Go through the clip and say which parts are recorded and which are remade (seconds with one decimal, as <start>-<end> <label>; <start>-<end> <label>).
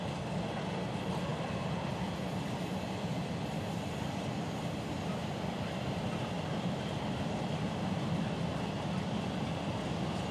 0.0-5.2 recorded; 5.2-8.4 remade; 8.4-10.3 recorded